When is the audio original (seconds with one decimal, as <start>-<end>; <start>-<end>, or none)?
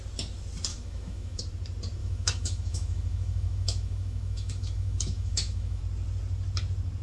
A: 0.0-0.7; 1.4-2.0; 5.8-7.0